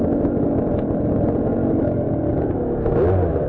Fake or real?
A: real